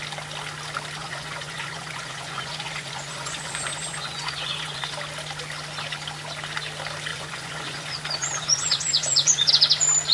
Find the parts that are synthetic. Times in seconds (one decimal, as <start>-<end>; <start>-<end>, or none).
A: 1.0-4.9; 7.1-9.5